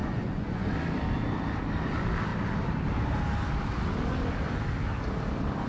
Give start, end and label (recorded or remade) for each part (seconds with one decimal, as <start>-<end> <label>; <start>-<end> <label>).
0.0-0.7 remade; 0.7-5.7 recorded